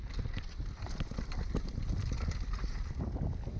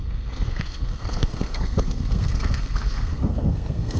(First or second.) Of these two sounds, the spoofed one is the second